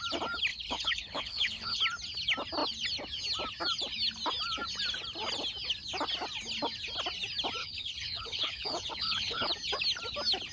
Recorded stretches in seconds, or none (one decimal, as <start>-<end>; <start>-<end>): 0.0-0.5; 1.8-7.6; 9.5-10.5